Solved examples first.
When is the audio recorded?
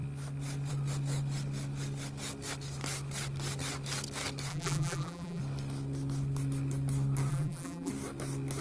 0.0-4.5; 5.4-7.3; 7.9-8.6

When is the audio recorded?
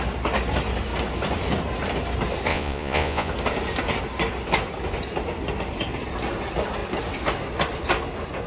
0.0-2.5; 3.3-8.5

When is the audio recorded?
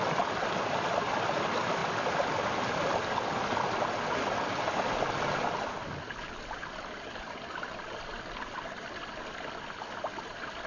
0.0-10.7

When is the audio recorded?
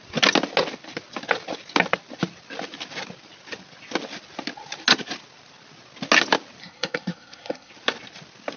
0.0-6.6; 7.7-8.6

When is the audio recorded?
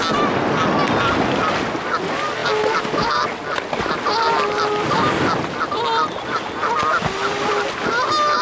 0.0-8.4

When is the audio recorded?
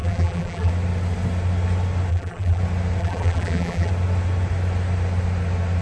0.7-2.1; 2.6-3.0; 3.9-5.8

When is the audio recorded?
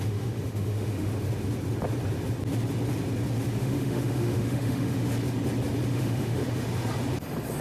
1.1-3.6; 5.1-5.9; 6.4-7.6